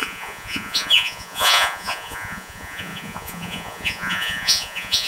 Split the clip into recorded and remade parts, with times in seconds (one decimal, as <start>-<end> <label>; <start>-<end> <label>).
0.0-5.1 remade